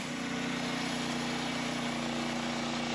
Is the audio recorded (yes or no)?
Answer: yes